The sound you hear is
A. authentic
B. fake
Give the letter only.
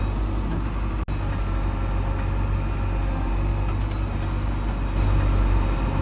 A